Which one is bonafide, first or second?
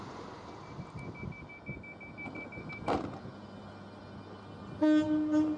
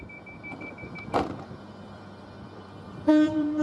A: first